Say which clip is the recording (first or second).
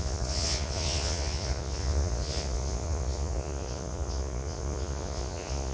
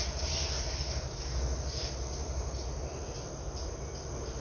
second